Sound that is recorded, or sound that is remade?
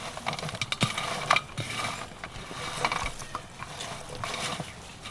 recorded